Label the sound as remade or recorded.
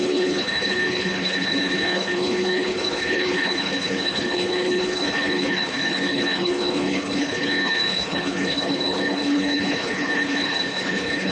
remade